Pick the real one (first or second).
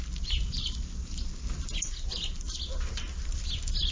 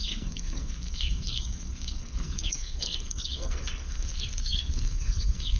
first